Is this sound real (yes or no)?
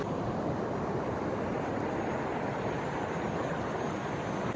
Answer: yes